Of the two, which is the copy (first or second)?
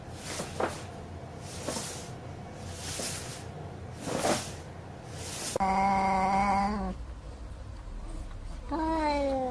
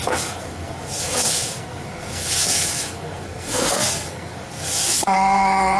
second